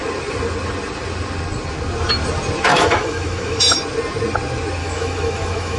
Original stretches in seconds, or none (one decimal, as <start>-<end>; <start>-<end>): 0.0-2.7; 3.6-4.8